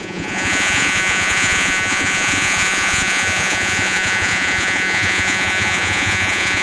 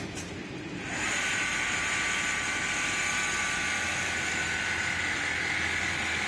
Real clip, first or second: second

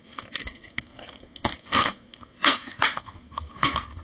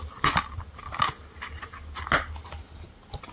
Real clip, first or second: second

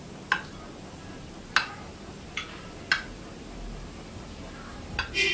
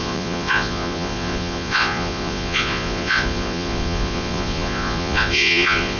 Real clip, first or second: first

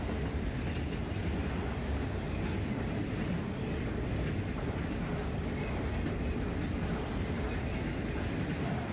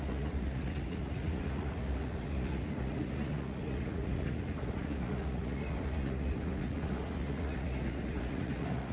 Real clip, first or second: first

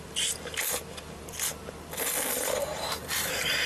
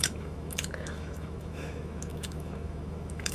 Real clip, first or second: first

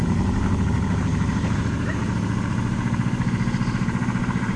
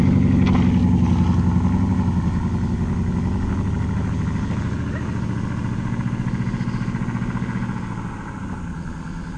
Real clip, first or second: second